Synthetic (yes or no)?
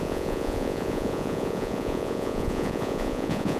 yes